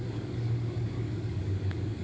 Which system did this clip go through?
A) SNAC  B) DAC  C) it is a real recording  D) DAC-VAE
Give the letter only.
B